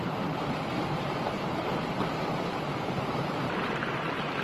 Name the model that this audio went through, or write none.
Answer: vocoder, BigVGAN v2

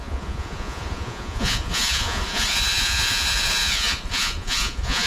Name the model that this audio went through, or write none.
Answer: vocoder, Vocos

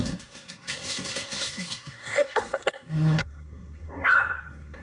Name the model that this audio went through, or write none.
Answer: codec, SNAC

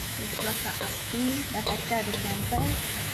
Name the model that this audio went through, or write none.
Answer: autoencoder, DAC-VAE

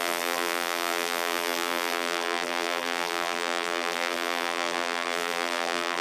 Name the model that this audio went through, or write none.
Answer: vocoder, BigVGAN v2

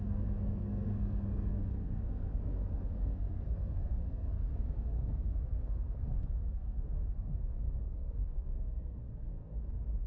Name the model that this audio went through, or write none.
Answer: codec, SNAC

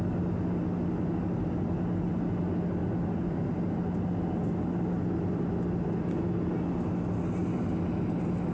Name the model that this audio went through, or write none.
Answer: none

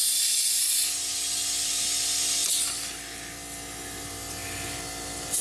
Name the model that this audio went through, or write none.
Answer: none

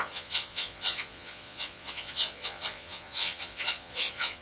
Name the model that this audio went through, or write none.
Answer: vocoder, Vocos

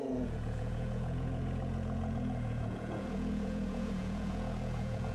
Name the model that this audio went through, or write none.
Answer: vocoder, Vocos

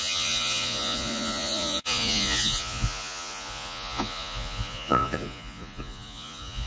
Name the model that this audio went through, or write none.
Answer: vocoder, Vocos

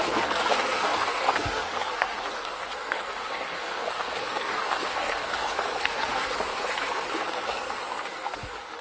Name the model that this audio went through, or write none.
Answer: codec, SNAC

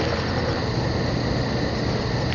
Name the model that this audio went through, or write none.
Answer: none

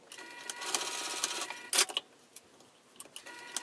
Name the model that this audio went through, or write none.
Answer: none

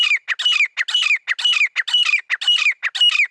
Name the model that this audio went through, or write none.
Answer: none